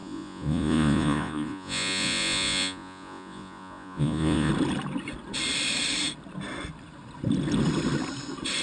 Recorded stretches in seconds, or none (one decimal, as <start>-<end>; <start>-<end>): 4.5-8.6